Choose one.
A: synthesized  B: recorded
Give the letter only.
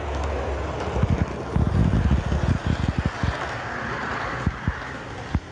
B